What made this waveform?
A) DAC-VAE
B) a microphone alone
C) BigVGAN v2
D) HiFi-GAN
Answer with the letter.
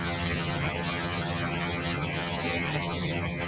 D